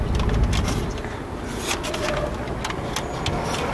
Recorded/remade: recorded